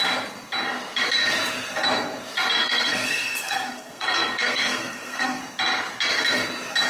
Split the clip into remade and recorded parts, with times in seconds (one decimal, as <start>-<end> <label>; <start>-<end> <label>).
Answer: 0.0-2.6 recorded; 2.6-5.4 remade; 5.4-6.9 recorded